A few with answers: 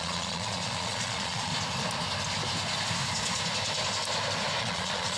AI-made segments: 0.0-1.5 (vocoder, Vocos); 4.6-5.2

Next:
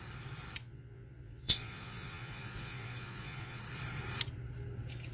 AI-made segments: 0.6-3.6 (vocoder, Vocos)

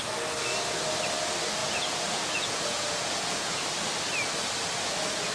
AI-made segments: 1.6-3.6 (vocoder, Vocos)

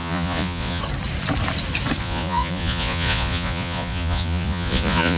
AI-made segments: 0.0-0.8 (vocoder, Vocos); 2.0-5.2

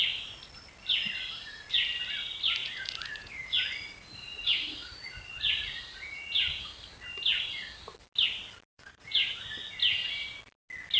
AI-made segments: 2.6-6.6 (vocoder, Vocos); 8.7-9.5

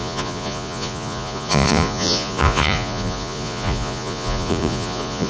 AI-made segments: 0.0-5.3 (vocoder, Vocos)

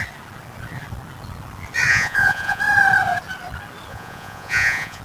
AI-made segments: 1.9-2.6 (vocoder, Vocos); 3.9-5.0